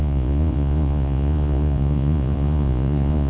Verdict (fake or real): fake